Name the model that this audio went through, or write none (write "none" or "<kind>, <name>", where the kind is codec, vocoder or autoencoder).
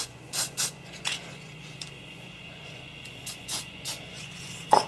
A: vocoder, Vocos